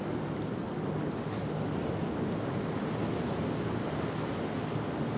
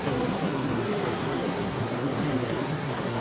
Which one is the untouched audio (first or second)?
first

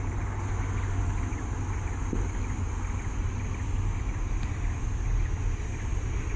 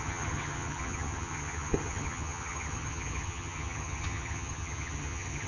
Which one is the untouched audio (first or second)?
first